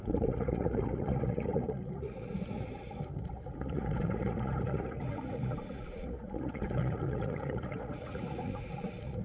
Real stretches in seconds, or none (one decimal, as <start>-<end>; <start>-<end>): none